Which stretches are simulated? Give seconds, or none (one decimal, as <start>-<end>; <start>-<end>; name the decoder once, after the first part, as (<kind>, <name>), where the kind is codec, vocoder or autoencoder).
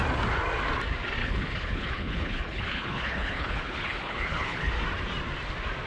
1.2-4.7 (codec, HILCodec)